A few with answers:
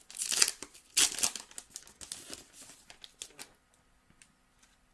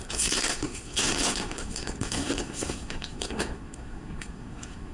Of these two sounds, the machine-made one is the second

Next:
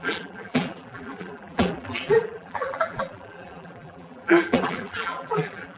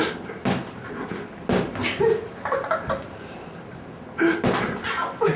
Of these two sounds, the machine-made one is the first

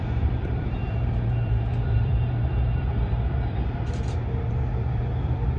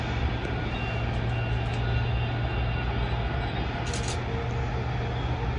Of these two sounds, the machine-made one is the first